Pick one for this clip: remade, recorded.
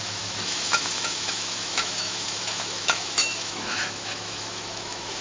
remade